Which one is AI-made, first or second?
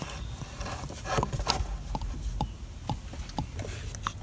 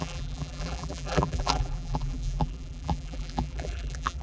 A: second